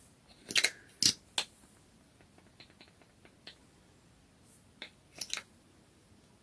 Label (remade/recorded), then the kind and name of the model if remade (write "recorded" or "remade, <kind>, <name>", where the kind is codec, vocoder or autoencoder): recorded